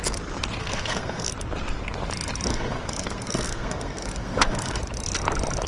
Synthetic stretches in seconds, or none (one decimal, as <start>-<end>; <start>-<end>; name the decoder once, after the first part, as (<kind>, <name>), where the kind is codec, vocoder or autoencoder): 0.6-1.3 (codec, SNAC); 2.5-4.8